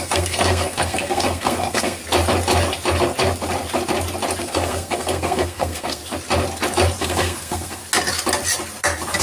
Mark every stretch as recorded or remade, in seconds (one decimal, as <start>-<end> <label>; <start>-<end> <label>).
0.0-2.0 remade; 2.0-4.4 recorded; 4.4-6.0 remade; 6.0-7.0 recorded; 7.0-7.8 remade; 7.8-9.2 recorded